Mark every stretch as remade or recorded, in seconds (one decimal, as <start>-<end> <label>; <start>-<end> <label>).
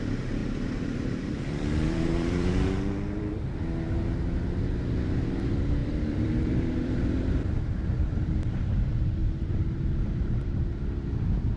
0.0-0.4 recorded; 0.4-3.3 remade; 3.3-5.8 recorded; 5.8-8.7 remade; 8.7-9.2 recorded; 9.2-10.7 remade; 10.7-11.6 recorded